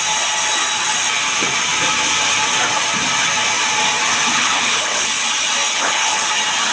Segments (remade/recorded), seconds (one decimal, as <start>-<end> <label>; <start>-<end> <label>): 0.0-4.3 recorded; 4.3-5.1 remade; 5.1-5.7 recorded; 5.7-6.3 remade; 6.3-6.7 recorded

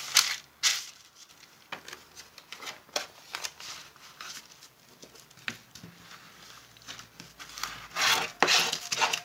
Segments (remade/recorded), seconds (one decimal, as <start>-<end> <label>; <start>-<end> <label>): 0.0-0.7 recorded; 0.7-1.3 remade; 1.3-3.8 recorded; 3.8-4.4 remade; 4.4-9.2 recorded

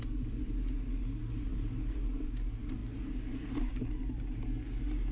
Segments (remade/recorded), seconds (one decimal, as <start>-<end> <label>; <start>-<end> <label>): 0.0-5.1 recorded

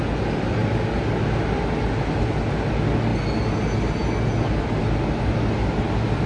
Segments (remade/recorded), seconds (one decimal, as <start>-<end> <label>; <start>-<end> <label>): 0.0-6.3 recorded